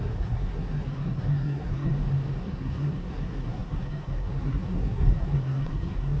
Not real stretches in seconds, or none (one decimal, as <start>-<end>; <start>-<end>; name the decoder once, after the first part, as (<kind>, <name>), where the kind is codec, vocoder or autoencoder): 0.0-1.9 (codec, SNAC); 2.4-6.2